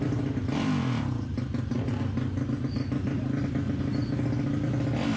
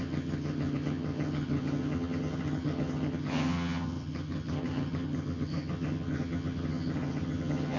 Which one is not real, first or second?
second